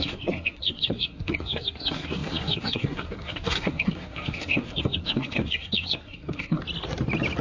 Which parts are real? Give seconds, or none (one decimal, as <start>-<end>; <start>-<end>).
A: 6.6-7.4